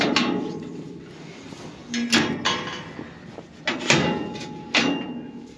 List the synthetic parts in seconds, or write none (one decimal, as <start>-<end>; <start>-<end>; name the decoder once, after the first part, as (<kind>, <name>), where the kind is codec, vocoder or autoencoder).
none